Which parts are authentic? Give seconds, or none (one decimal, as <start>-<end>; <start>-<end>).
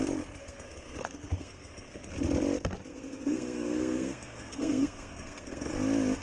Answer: 0.0-0.4; 2.1-2.9; 5.7-6.2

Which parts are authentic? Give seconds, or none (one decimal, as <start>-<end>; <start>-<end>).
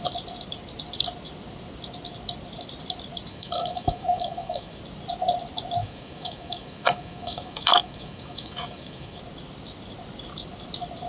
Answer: 0.0-3.3; 4.8-5.8; 9.2-11.1